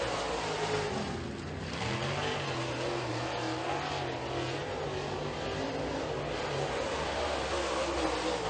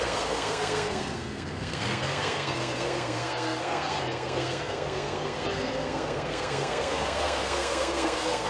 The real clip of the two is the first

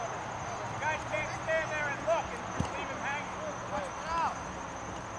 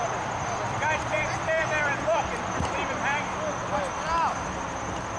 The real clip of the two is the first